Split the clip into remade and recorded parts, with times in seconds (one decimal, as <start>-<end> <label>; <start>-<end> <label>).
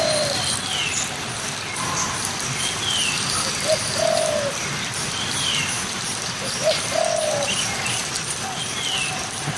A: 0.0-5.0 recorded; 5.0-5.6 remade; 5.6-9.6 recorded